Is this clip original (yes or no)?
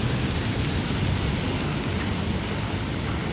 yes